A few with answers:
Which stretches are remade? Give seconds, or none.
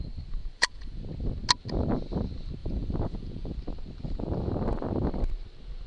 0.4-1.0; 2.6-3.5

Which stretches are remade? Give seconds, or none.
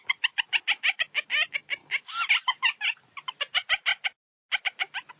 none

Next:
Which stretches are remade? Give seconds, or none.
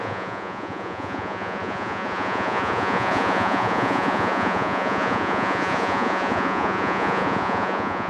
0.0-8.1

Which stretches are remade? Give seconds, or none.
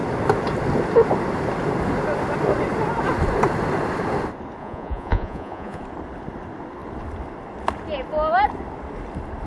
4.6-5.8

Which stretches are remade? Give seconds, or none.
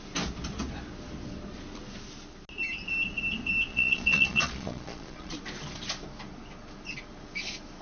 3.7-5.4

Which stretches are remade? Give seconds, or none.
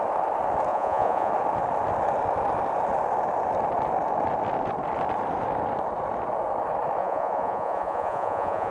0.7-1.3; 7.0-8.7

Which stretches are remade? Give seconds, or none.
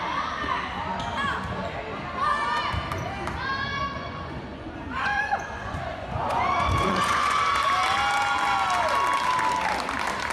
4.0-7.4